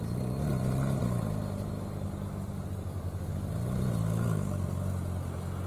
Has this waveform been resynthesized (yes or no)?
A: no